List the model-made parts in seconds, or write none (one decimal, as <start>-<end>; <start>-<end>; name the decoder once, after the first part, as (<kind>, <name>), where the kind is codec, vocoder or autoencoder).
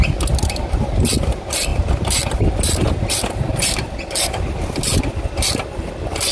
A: 1.2-6.3 (vocoder, BigVGAN v2)